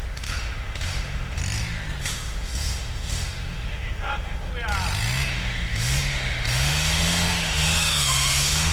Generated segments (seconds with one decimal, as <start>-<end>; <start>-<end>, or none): 0.0-1.4; 2.0-4.5; 5.3-8.7